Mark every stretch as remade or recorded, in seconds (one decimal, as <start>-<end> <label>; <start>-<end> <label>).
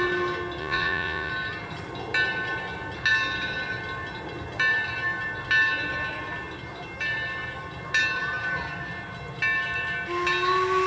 0.0-0.6 recorded; 0.6-1.3 remade; 1.3-10.9 recorded